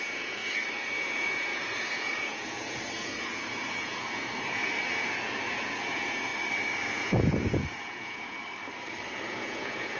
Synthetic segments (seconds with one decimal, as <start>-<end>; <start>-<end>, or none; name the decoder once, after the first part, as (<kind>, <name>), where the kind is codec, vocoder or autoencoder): 0.0-0.4 (vocoder, Vocos); 1.0-6.3; 6.8-8.4; 9.3-10.0